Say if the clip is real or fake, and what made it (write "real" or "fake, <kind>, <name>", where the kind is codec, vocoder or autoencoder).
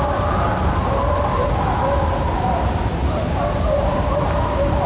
real